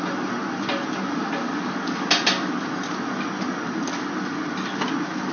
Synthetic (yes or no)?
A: no